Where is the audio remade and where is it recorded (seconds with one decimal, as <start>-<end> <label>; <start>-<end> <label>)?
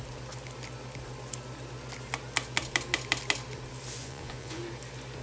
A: 0.0-4.0 recorded; 4.0-4.6 remade; 4.6-5.2 recorded